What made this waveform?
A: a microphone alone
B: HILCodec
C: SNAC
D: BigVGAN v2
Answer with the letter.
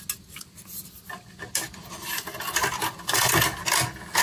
A